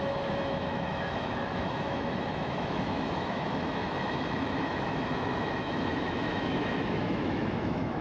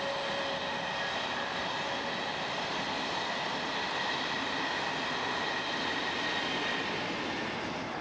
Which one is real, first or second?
second